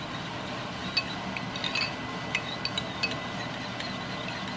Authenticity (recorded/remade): recorded